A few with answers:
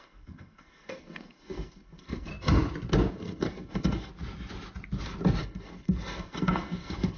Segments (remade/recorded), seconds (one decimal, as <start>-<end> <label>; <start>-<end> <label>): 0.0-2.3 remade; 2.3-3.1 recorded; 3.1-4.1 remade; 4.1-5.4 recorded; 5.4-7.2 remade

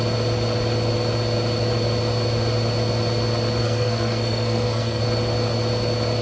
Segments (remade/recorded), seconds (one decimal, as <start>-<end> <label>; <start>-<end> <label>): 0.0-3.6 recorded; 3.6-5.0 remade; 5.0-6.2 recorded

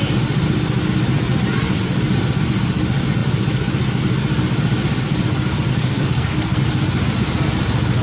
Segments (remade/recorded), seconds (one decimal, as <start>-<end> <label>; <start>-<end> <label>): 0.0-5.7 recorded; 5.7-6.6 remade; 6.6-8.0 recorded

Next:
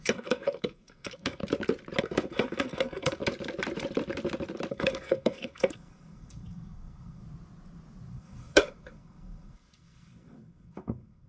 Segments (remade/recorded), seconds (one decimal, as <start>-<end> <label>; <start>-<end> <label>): 0.0-1.4 remade; 1.4-2.0 recorded; 2.0-3.2 remade; 3.2-4.7 recorded; 4.7-7.2 remade; 7.2-8.1 recorded; 8.1-11.3 remade